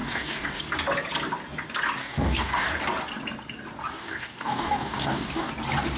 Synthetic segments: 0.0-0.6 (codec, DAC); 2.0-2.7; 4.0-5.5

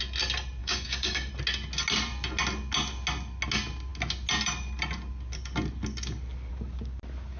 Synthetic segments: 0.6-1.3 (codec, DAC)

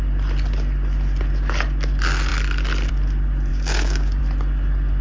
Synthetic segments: 3.5-4.2 (codec, DAC)